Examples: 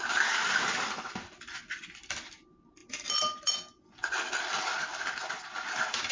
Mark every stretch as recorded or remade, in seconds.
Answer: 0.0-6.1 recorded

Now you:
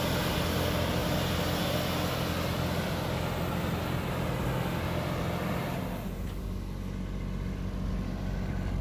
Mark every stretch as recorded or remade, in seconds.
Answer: 0.0-8.8 recorded

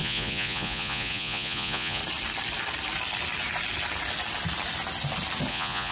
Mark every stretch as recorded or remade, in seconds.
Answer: 0.0-2.0 remade; 2.0-5.5 recorded; 5.5-5.9 remade

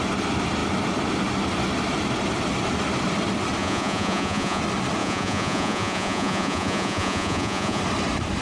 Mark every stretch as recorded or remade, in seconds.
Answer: 0.0-3.6 recorded; 3.6-4.6 remade; 4.6-5.0 recorded; 5.0-7.8 remade; 7.8-8.4 recorded

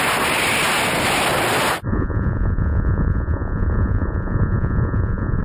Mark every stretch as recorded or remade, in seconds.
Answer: 0.0-1.9 recorded; 1.9-5.4 remade